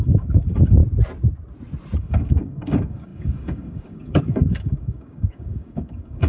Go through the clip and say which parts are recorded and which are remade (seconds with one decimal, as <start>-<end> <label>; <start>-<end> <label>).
0.0-0.8 remade; 0.8-2.0 recorded; 2.0-6.3 remade